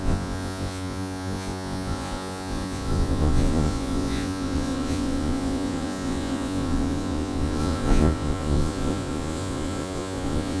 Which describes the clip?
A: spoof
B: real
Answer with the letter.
A